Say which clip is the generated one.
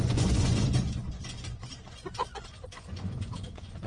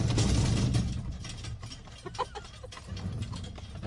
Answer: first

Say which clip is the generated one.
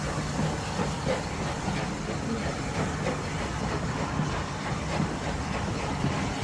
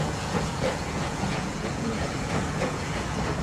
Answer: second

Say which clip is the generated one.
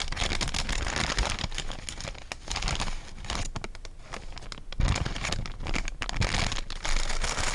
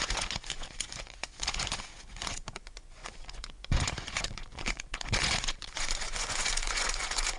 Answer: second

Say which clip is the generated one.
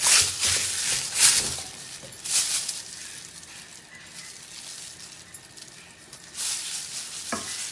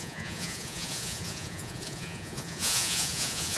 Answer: second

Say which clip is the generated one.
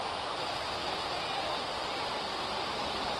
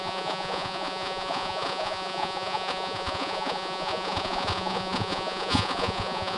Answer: second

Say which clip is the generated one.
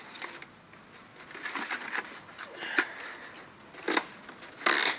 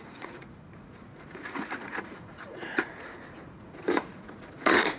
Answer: second